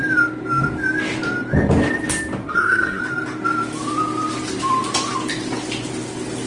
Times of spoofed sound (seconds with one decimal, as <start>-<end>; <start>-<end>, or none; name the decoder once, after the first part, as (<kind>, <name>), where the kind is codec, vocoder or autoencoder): 2.4-3.0 (codec, SNAC)